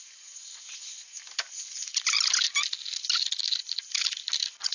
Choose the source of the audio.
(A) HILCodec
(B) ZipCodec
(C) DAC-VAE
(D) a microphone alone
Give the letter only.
D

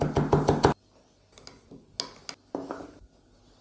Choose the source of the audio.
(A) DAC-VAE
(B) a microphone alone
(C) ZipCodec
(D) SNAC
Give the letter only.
B